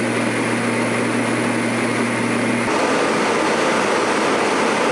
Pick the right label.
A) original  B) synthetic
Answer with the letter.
A